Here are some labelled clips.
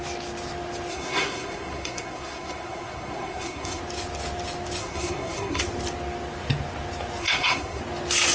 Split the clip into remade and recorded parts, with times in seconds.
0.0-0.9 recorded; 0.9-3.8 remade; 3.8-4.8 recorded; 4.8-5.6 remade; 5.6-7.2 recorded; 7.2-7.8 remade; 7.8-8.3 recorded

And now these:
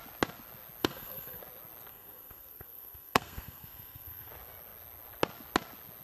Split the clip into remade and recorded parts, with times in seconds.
0.0-0.8 recorded; 0.8-1.4 remade; 1.4-1.9 recorded; 1.9-4.3 remade; 4.3-6.0 recorded